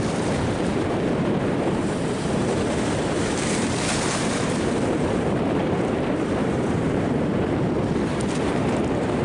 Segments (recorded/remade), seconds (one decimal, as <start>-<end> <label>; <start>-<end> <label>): 0.0-7.3 remade; 7.3-8.4 recorded; 8.4-9.2 remade